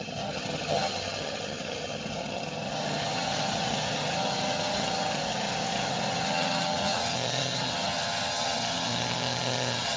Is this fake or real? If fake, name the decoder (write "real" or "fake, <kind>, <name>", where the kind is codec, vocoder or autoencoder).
fake, vocoder, HiFi-GAN